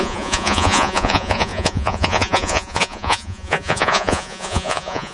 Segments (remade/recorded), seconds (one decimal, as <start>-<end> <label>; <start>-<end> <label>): 0.0-5.1 remade

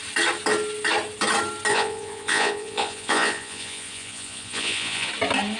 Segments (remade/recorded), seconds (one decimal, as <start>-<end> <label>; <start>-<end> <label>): 0.0-1.7 recorded; 1.7-5.1 remade; 5.1-5.6 recorded